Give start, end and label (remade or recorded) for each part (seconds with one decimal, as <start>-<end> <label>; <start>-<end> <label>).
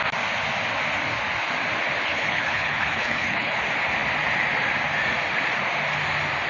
0.0-2.1 recorded; 2.1-3.6 remade; 3.6-6.5 recorded